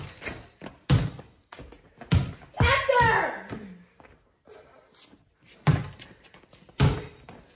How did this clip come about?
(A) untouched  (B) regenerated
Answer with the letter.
A